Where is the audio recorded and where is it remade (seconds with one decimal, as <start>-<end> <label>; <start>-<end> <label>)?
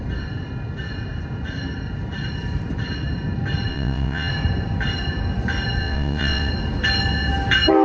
0.0-3.7 recorded; 3.7-4.3 remade; 4.3-5.8 recorded; 5.8-6.5 remade; 6.5-7.8 recorded